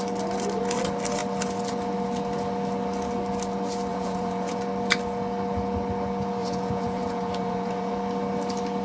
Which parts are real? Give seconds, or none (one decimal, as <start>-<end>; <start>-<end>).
0.0-3.9; 4.6-6.4; 7.9-8.8